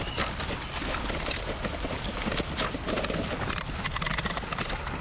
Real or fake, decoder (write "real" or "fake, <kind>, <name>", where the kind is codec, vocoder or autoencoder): real